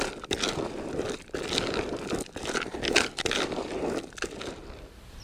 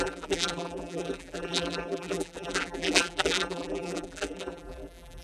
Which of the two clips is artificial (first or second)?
second